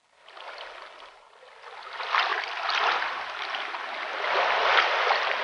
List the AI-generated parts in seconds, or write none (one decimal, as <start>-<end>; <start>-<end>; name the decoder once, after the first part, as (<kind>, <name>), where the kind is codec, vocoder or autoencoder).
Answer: none